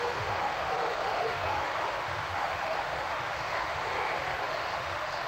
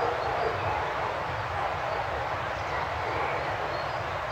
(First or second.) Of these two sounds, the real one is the second